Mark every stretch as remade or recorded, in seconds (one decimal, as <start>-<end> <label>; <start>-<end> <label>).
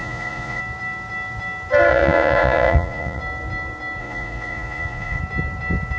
0.0-0.6 remade; 0.6-1.9 recorded; 1.9-3.2 remade; 3.2-4.0 recorded; 4.0-5.2 remade; 5.2-6.0 recorded